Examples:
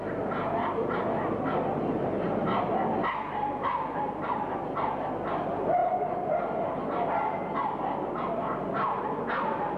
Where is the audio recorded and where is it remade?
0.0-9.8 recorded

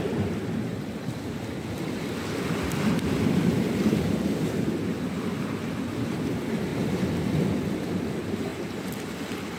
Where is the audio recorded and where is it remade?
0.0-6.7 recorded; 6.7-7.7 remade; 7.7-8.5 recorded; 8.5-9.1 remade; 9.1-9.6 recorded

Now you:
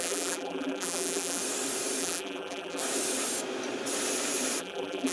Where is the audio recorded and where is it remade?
0.0-1.4 remade; 1.4-2.0 recorded; 2.0-2.8 remade; 2.8-4.6 recorded; 4.6-5.1 remade